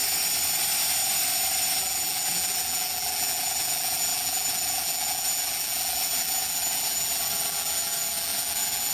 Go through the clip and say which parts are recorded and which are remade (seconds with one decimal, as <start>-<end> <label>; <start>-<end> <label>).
0.0-1.8 recorded; 1.8-8.9 remade